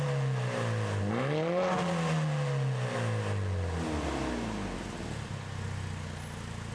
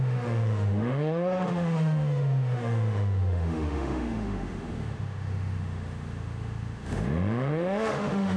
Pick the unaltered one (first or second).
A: first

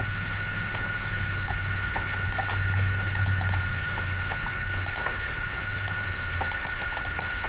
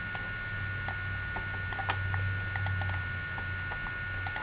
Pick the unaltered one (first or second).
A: second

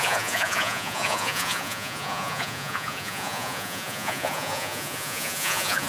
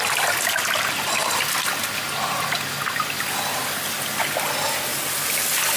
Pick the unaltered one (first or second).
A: second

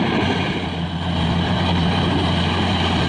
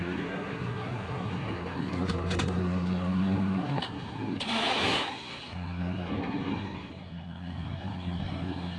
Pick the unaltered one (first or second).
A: first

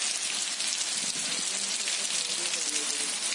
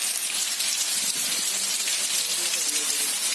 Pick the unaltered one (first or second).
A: first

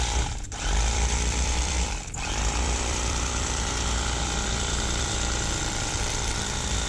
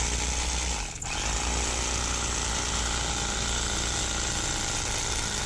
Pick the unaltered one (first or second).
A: second